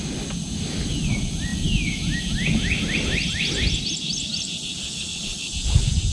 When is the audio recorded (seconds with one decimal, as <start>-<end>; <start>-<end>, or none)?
0.0-4.8; 5.5-6.1